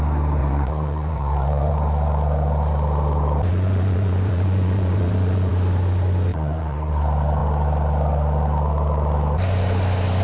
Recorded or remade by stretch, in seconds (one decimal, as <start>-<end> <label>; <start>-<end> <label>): 0.0-0.4 recorded; 0.4-1.7 remade; 1.7-3.5 recorded; 3.5-5.5 remade; 5.5-6.3 recorded; 6.3-6.9 remade; 6.9-10.2 recorded